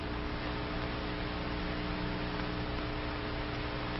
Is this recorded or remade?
recorded